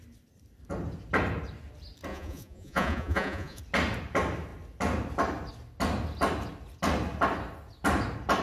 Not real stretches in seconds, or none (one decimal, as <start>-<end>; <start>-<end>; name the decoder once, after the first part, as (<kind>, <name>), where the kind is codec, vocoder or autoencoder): 2.1-3.6 (vocoder, Vocos)